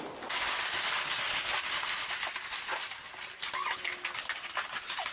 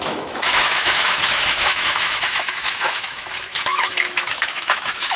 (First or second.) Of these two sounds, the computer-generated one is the second